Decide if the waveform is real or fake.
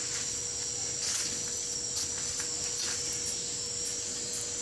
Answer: real